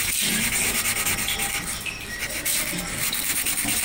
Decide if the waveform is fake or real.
real